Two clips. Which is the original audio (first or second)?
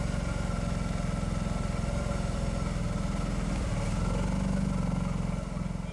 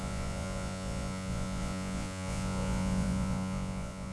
first